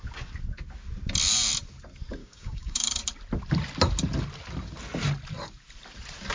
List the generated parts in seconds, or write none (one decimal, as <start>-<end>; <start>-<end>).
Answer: 2.2-3.0